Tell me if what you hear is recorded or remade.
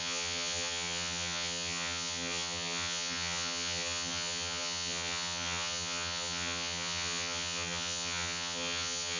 remade